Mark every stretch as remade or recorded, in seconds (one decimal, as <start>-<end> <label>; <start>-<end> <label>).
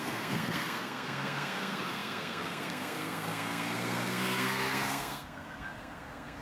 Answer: 0.0-6.4 remade